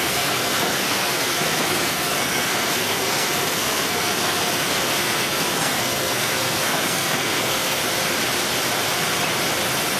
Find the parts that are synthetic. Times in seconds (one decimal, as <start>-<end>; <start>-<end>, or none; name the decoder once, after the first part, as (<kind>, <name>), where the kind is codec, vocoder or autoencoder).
0.0-7.8 (codec, SNAC)